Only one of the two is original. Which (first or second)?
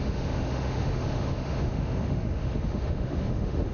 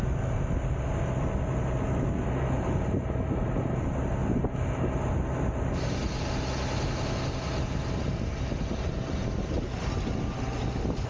second